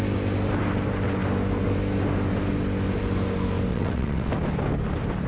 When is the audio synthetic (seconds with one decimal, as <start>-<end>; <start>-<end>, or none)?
3.7-4.3